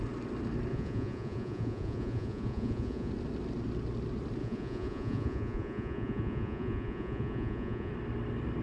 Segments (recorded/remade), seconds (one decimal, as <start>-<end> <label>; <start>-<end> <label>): 0.0-0.7 recorded; 0.7-3.1 remade; 3.1-4.4 recorded; 4.4-7.9 remade; 7.9-8.6 recorded